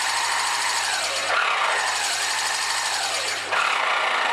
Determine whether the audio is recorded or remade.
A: remade